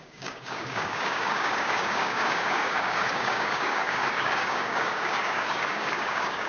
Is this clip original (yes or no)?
no